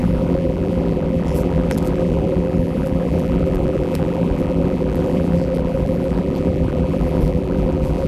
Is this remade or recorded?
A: remade